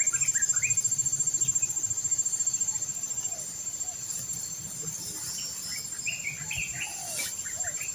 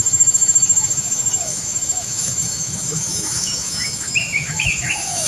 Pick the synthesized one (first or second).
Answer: second